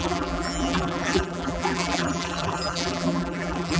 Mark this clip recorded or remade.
remade